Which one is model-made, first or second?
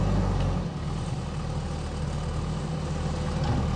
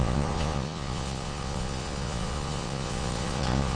second